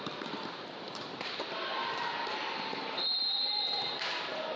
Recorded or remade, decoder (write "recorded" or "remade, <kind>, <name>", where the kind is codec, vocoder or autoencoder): recorded